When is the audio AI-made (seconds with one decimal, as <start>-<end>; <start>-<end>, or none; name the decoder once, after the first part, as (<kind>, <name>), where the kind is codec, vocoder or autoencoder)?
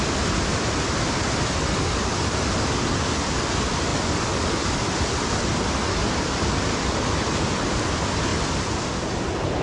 3.9-5.3 (vocoder, BigVGAN v2); 6.0-6.6; 8.3-9.0